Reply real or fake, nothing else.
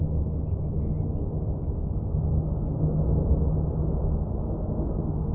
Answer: real